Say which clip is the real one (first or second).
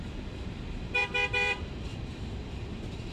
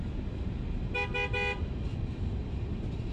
second